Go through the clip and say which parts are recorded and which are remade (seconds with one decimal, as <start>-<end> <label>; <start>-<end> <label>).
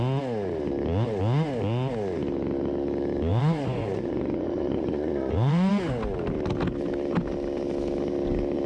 0.0-3.3 recorded; 3.3-5.7 remade; 5.7-8.7 recorded